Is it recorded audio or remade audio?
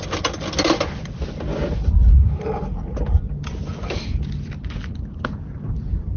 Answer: recorded